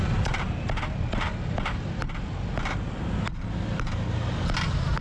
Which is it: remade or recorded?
recorded